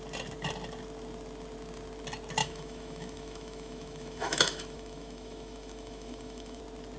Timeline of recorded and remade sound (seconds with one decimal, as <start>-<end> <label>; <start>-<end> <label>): 0.0-2.4 recorded; 2.4-6.6 remade; 6.6-7.0 recorded